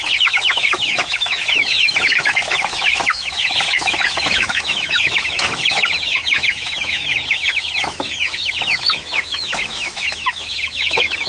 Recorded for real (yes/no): no